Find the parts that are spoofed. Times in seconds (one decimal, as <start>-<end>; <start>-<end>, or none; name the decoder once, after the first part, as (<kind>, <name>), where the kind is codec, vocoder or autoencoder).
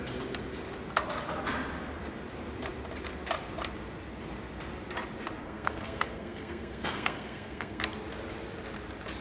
5.4-7.8 (codec, SNAC)